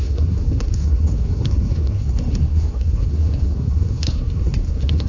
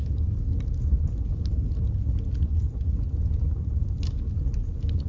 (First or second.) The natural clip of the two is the second